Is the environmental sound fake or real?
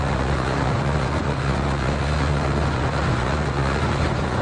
fake